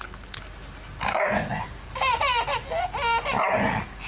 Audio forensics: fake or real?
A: real